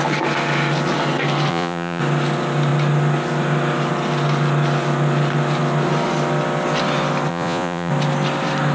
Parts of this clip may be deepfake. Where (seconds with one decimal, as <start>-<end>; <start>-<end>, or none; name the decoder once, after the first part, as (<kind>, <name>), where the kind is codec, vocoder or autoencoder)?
1.5-2.0 (vocoder, Vocos); 7.3-7.9